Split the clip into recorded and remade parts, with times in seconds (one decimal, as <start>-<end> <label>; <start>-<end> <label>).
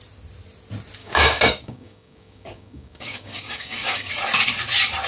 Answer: 0.0-1.0 recorded; 1.0-4.1 remade; 4.1-5.1 recorded